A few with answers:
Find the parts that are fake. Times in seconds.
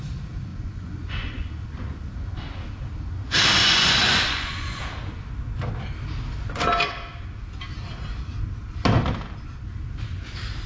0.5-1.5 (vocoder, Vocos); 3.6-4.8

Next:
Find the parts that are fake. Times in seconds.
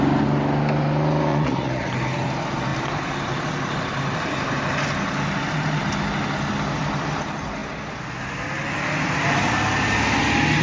1.3-1.9 (vocoder, Vocos)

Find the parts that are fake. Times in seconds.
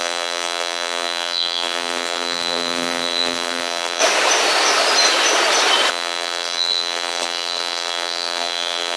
0.0-4.0 (vocoder, BigVGAN v2); 5.9-9.0